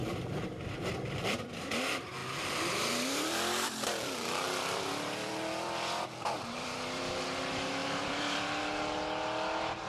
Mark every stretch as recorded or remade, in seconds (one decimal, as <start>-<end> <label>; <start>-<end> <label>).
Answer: 0.0-1.6 remade; 1.6-2.2 recorded; 2.2-7.0 remade; 7.0-7.8 recorded; 7.8-8.6 remade; 8.6-9.9 recorded